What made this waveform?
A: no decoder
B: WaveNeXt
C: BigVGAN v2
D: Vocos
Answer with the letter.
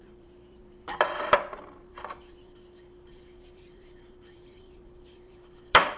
C